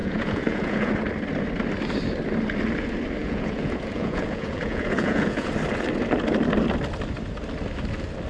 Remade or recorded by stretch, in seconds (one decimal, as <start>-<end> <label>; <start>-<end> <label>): 0.0-0.9 remade; 0.9-3.2 recorded; 3.2-5.5 remade; 5.5-8.3 recorded